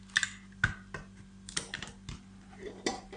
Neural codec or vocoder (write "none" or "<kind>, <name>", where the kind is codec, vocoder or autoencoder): none